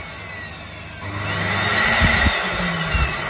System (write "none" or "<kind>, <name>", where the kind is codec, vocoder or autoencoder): none